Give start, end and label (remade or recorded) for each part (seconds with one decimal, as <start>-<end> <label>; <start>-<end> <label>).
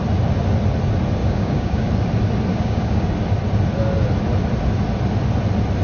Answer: 0.0-1.2 recorded; 1.2-1.9 remade; 1.9-2.5 recorded; 2.5-3.1 remade; 3.1-5.8 recorded